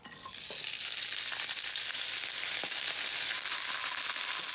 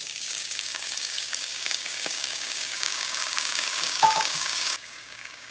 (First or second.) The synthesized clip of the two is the second